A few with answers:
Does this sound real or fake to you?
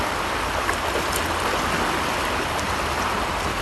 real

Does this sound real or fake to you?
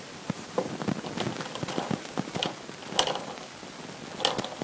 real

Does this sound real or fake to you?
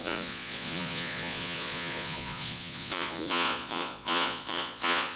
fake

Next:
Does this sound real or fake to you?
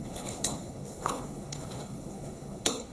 fake